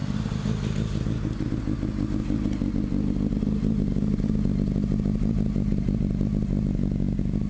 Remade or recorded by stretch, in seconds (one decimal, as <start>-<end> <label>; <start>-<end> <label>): 0.0-7.5 recorded

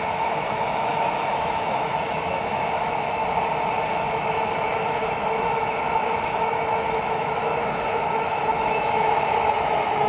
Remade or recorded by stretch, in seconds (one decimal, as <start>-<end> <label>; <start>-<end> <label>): 0.0-3.2 remade; 3.2-3.9 recorded; 3.9-10.1 remade

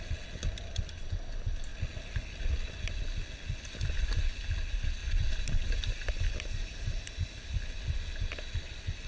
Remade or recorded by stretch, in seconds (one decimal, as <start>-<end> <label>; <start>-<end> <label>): 0.0-9.1 recorded